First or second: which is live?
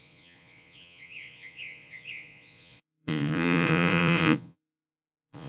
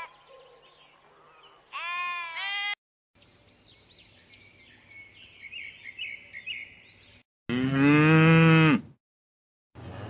second